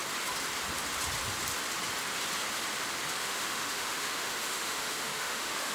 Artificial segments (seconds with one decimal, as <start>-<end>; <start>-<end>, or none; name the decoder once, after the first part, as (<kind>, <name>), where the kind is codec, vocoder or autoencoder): 3.2-5.7 (autoencoder, DAC-VAE)